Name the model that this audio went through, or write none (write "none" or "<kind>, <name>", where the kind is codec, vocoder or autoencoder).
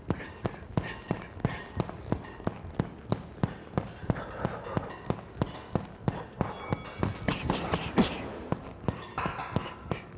none